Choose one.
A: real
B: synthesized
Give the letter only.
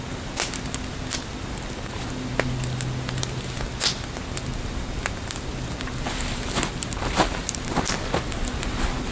A